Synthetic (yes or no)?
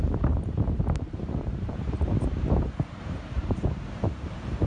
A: yes